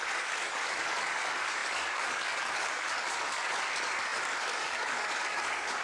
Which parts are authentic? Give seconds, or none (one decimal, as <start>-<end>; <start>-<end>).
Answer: none